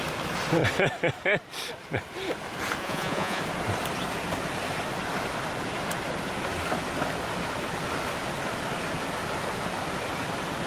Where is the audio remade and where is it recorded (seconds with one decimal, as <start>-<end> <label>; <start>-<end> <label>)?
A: 0.0-2.8 recorded; 2.8-3.4 remade; 3.4-10.7 recorded

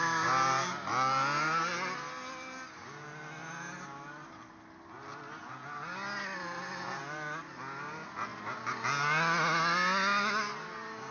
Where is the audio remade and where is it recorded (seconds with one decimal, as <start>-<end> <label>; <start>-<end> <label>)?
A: 0.0-11.1 recorded

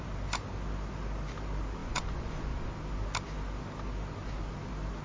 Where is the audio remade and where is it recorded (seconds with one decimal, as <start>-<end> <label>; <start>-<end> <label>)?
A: 0.0-1.8 recorded; 1.8-2.7 remade; 2.7-5.0 recorded